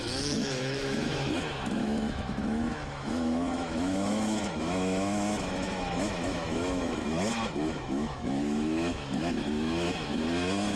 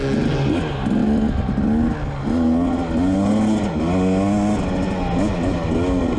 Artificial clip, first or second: first